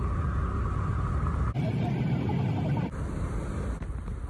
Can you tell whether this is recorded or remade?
recorded